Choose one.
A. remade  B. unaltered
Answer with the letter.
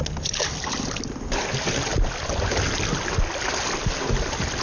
B